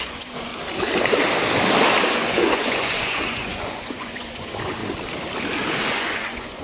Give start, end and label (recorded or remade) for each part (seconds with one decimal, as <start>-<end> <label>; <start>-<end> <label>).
0.0-0.5 remade; 0.5-2.1 recorded; 2.1-4.8 remade; 4.8-5.9 recorded; 5.9-6.6 remade